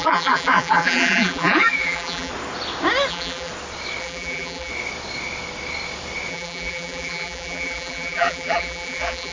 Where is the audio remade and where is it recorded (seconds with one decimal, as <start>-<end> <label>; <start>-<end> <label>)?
0.0-2.3 remade; 2.3-3.1 recorded; 3.1-3.5 remade; 3.5-4.0 recorded; 4.0-4.7 remade; 4.7-6.3 recorded; 6.3-9.3 remade